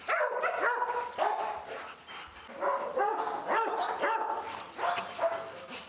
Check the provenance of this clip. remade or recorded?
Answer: recorded